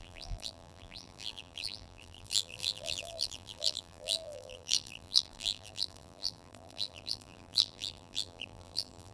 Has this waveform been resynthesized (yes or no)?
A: yes